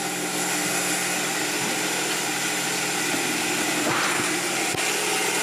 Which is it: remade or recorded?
recorded